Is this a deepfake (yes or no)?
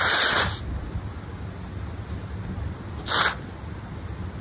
no